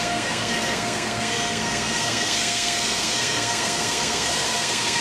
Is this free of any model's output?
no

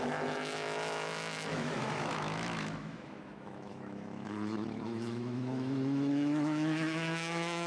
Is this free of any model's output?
no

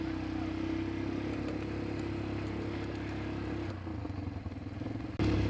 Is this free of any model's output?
yes